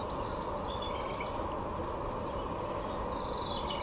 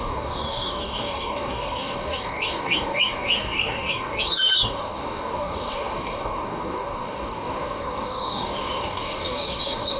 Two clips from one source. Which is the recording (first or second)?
first